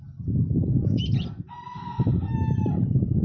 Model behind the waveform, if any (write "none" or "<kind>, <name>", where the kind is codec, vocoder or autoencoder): none